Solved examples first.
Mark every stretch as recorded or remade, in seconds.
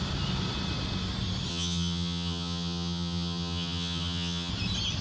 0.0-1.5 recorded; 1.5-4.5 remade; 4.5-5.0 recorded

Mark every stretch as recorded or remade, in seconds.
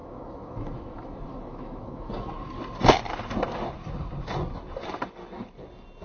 0.0-2.1 remade; 2.1-6.0 recorded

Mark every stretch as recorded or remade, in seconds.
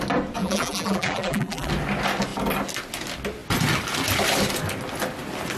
0.0-0.4 recorded; 0.4-1.7 remade; 1.7-5.6 recorded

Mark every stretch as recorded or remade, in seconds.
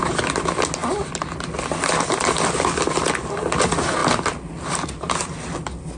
0.0-6.0 recorded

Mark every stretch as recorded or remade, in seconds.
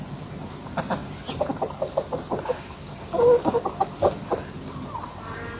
0.0-5.6 recorded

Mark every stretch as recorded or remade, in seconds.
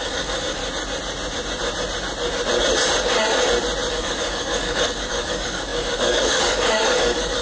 0.0-0.6 remade; 0.6-3.9 recorded; 3.9-7.4 remade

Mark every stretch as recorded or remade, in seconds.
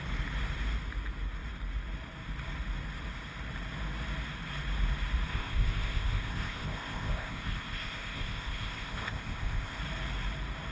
0.0-5.3 recorded; 5.3-9.8 remade; 9.8-10.7 recorded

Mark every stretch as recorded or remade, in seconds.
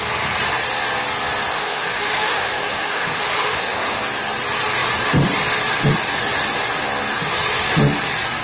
0.0-1.5 recorded; 1.5-4.0 remade; 4.0-8.4 recorded